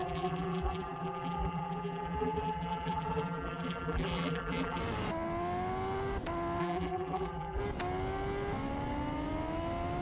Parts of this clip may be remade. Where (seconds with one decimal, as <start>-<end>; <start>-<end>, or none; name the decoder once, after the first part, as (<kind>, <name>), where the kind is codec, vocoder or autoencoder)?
0.0-4.8 (vocoder, BigVGAN v2); 6.6-7.6